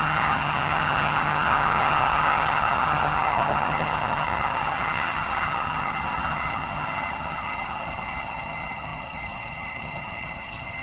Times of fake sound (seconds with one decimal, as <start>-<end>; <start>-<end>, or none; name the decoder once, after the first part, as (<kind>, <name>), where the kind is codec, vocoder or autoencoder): 0.0-10.8 (vocoder, HiFi-GAN)

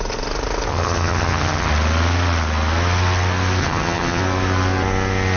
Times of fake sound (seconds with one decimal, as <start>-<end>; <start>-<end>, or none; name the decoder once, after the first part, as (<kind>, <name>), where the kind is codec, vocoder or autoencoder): 0.7-1.7 (vocoder, HiFi-GAN); 3.6-4.2

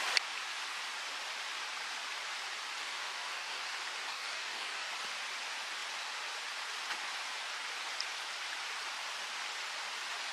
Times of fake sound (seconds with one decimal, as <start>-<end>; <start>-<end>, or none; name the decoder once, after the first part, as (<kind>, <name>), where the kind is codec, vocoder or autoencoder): 2.8-3.6 (codec, DAC); 4.1-4.9